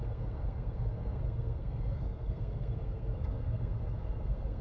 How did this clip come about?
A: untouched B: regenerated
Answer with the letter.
B